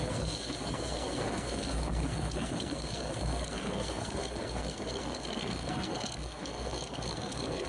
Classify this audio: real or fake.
fake